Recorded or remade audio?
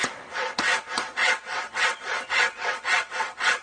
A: remade